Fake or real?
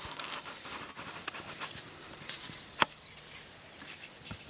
real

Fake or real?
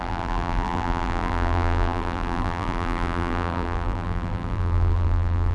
fake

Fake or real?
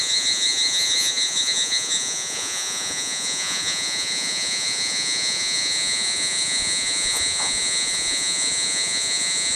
fake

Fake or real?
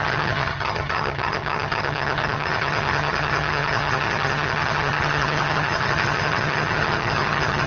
fake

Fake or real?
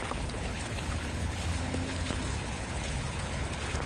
fake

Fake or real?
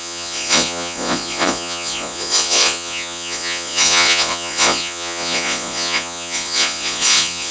fake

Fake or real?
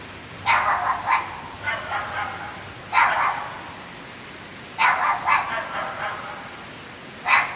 real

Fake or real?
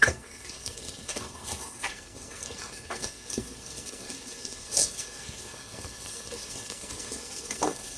fake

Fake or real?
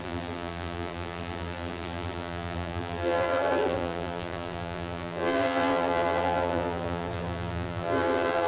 fake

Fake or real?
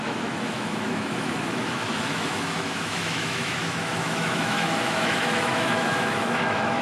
fake